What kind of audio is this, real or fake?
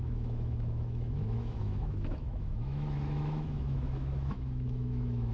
fake